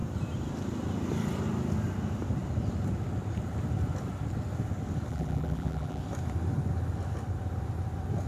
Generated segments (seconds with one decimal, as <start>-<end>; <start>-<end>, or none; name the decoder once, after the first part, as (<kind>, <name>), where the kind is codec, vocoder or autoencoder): 5.1-6.0 (vocoder, BigVGAN v2)